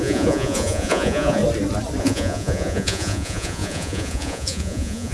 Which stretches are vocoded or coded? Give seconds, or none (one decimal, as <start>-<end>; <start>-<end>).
0.0-1.4; 2.0-5.1

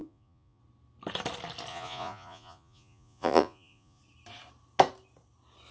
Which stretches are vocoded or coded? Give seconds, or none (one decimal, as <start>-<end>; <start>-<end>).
0.0-0.6; 1.7-4.0

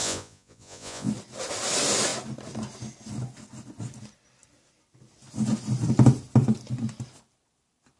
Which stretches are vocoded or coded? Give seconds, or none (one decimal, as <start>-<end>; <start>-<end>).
0.0-1.1

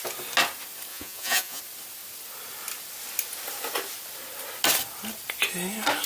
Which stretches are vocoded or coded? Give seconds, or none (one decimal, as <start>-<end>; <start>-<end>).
0.9-1.6

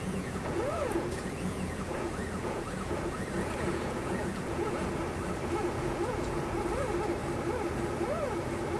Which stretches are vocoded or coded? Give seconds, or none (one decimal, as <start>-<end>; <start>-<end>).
0.0-5.0; 5.6-6.6

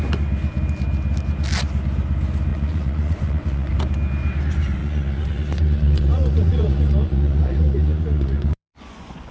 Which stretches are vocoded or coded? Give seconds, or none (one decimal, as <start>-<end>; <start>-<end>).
2.5-3.7; 4.8-9.3